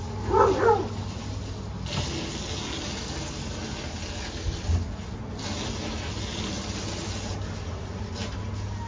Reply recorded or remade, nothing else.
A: recorded